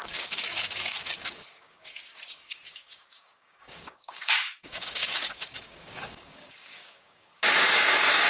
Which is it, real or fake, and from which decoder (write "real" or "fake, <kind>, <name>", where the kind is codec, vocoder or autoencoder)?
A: fake, codec, DAC